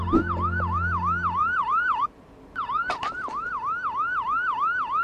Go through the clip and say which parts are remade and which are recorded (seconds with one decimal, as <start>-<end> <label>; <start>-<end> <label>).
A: 0.0-1.4 recorded; 1.4-3.5 remade; 3.5-5.0 recorded